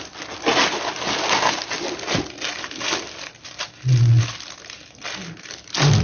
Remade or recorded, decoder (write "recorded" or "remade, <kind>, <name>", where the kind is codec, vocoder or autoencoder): recorded